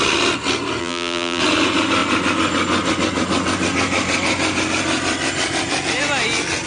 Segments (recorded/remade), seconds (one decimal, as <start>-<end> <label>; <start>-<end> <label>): 0.0-0.8 recorded; 0.8-1.4 remade; 1.4-6.7 recorded